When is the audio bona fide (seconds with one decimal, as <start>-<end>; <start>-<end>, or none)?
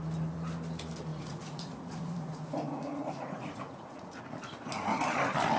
0.0-1.1; 4.2-5.6